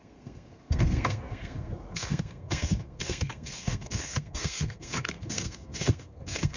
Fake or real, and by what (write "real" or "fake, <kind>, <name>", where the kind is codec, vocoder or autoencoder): fake, codec, SNAC